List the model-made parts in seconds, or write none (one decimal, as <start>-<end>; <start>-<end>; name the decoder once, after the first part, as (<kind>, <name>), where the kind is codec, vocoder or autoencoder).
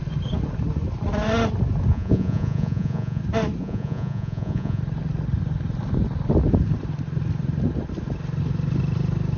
1.9-3.2 (vocoder, Vocos); 3.6-4.8